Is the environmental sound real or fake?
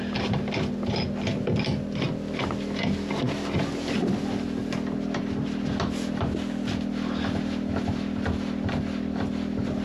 real